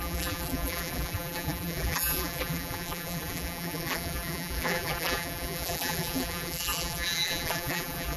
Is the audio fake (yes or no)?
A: yes